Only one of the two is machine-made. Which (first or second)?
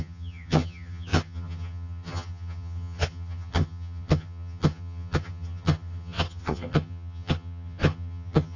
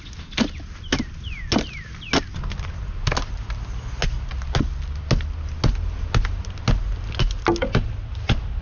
first